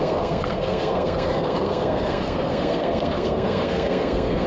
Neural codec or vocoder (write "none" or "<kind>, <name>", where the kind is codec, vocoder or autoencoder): codec, SNAC